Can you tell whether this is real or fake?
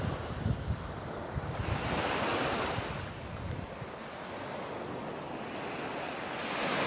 real